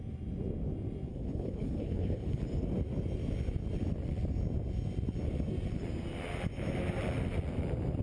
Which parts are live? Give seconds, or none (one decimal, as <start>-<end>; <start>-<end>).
0.0-1.1; 2.4-8.0